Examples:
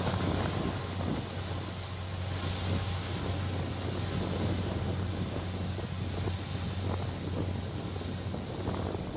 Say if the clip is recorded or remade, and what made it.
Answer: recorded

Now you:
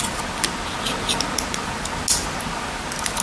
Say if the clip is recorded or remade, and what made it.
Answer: recorded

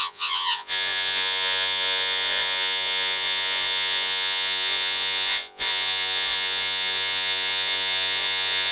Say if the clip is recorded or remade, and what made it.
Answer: remade, vocoder, Vocos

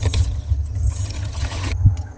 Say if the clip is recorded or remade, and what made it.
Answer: remade, vocoder, HiFi-GAN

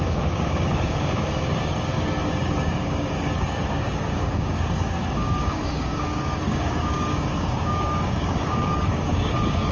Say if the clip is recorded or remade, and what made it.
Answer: remade, codec, DAC